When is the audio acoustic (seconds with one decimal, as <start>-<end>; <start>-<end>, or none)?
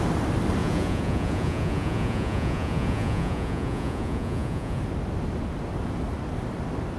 0.0-0.6; 4.8-7.0